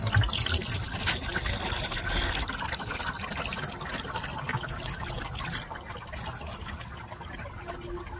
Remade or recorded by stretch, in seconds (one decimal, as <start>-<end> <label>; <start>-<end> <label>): 0.0-8.2 recorded